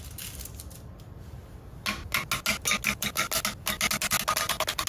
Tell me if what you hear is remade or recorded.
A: recorded